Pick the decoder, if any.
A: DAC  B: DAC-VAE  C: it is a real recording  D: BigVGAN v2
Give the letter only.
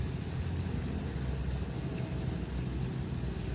C